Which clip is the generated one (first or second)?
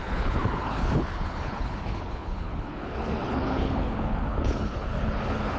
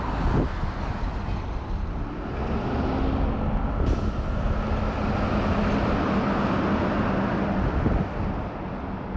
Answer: first